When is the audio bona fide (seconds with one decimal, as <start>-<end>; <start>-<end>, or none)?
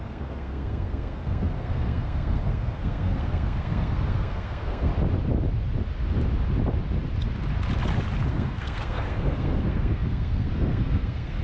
4.9-8.3